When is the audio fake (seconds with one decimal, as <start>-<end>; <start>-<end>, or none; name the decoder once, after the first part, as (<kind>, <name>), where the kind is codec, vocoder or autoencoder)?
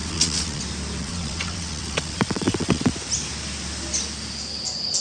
0.0-0.6 (vocoder, WaveNeXt); 1.0-2.9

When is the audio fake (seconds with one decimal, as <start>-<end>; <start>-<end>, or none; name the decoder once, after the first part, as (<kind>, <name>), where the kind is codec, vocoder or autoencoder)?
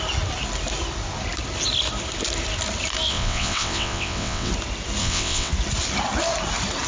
3.1-4.5 (vocoder, WaveNeXt); 5.0-5.5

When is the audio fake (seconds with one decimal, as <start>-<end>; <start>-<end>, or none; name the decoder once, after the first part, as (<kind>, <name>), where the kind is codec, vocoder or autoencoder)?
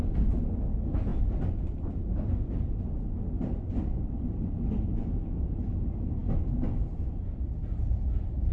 4.9-5.6 (vocoder, Vocos)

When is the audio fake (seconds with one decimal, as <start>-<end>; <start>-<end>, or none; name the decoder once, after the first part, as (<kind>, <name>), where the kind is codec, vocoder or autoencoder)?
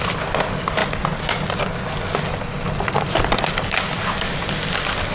none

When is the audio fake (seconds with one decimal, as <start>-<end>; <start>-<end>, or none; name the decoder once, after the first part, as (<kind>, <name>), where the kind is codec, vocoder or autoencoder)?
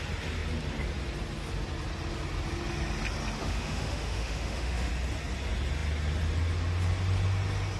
3.4-4.9 (autoencoder, DAC-VAE)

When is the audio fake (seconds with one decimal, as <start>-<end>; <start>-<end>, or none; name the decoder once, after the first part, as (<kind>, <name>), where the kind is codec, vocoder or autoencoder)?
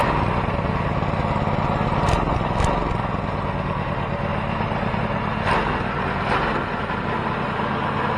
4.3-5.3 (vocoder, BigVGAN v2)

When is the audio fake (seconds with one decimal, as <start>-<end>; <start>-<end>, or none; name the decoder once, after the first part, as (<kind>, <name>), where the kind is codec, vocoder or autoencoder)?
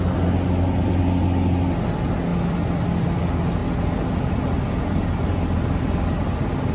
none